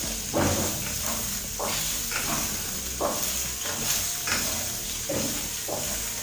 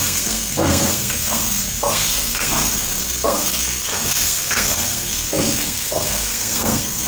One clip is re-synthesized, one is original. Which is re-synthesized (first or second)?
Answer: second